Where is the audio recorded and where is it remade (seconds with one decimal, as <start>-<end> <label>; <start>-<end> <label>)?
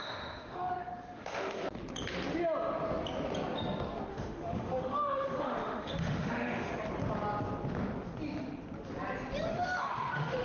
0.0-1.6 remade; 1.6-4.1 recorded; 4.1-6.7 remade; 6.7-9.5 recorded; 9.5-10.4 remade